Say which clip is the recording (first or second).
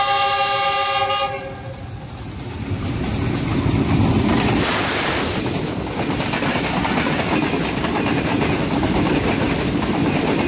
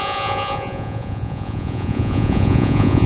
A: first